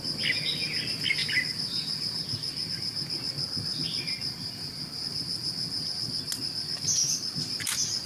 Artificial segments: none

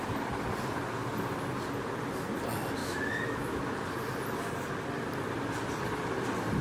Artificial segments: 2.8-3.6 (autoencoder, DAC-VAE)